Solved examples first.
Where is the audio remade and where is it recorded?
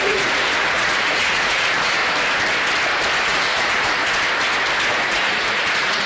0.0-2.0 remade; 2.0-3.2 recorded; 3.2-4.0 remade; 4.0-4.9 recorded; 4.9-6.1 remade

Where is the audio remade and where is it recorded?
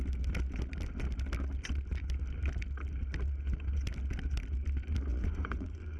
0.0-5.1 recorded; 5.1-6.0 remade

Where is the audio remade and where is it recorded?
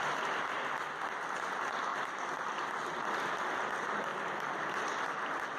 0.0-5.6 recorded